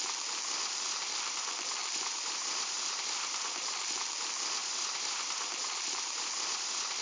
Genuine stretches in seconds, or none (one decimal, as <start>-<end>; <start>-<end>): 0.0-1.8; 3.9-4.6